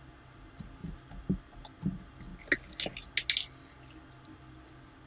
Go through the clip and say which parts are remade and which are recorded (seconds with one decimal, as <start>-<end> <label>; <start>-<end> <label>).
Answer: 0.0-0.8 recorded; 0.8-1.6 remade; 1.6-5.1 recorded

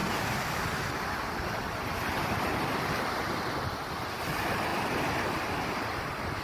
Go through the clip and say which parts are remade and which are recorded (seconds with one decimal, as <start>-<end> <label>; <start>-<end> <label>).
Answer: 0.0-6.4 recorded

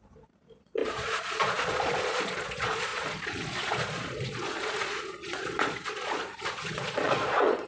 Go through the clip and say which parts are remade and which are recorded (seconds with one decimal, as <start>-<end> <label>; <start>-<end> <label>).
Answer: 0.0-7.7 remade

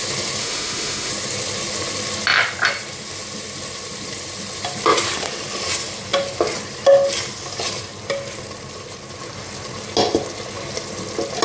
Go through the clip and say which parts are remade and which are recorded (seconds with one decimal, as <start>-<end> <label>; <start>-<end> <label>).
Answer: 0.0-0.4 recorded; 0.4-1.1 remade; 1.1-11.4 recorded

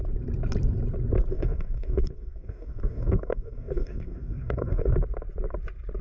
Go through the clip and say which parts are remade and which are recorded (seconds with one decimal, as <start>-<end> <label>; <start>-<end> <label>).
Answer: 0.0-1.3 recorded; 1.3-4.9 remade; 4.9-6.0 recorded

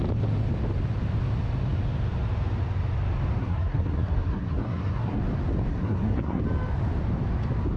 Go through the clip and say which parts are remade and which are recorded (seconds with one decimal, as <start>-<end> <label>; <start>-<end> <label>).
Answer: 0.0-3.4 recorded; 3.4-5.2 remade; 5.2-5.7 recorded; 5.7-6.4 remade; 6.4-7.8 recorded